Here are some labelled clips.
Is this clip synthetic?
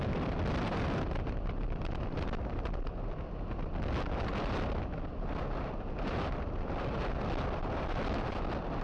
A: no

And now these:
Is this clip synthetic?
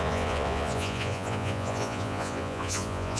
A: yes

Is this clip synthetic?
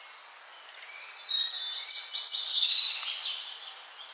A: no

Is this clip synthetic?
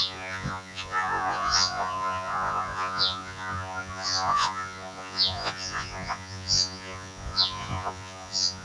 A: yes